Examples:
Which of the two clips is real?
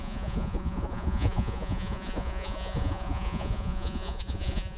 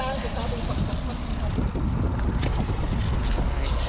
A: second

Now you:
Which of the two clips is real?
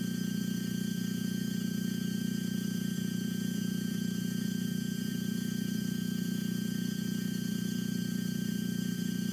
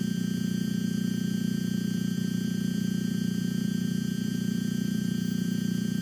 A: second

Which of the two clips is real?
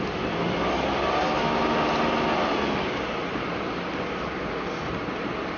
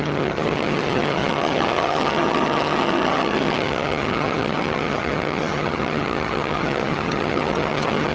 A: first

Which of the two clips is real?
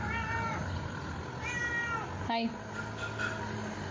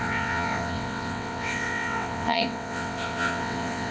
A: first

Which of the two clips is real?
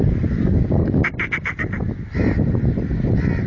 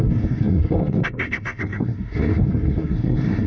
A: first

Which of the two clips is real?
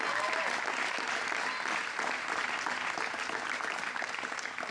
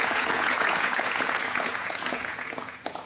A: first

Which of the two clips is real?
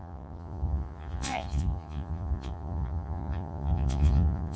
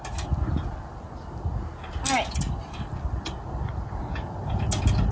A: second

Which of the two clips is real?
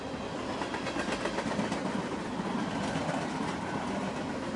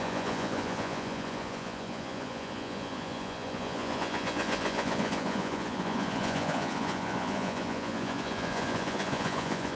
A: first